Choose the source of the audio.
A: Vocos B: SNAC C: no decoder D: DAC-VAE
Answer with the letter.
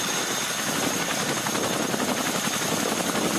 C